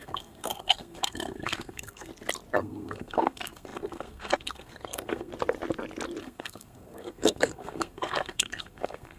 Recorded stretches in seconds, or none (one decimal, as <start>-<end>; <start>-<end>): 2.1-2.6; 5.3-6.2